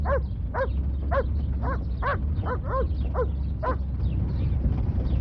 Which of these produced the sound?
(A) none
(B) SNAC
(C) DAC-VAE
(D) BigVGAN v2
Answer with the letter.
A